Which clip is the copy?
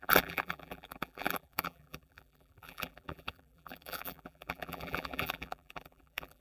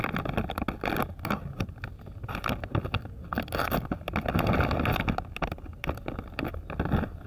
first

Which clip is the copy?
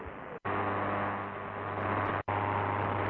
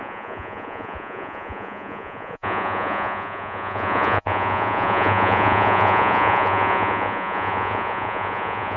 second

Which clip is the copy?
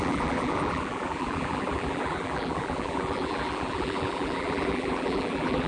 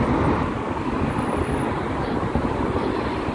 first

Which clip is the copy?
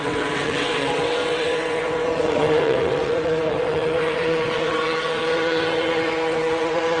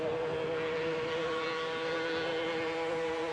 first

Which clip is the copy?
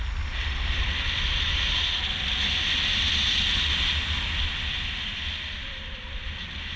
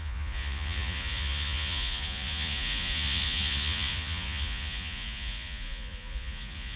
second